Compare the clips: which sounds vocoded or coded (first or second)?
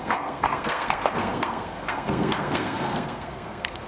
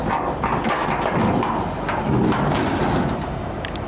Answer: first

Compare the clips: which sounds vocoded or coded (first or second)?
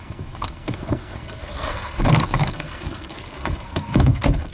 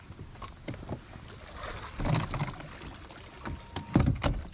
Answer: first